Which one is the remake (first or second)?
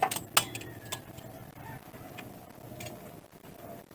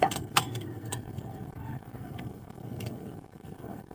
second